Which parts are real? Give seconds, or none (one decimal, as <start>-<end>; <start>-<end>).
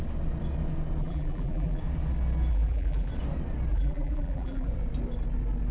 0.0-1.0; 1.8-2.5; 3.1-3.7; 4.7-5.7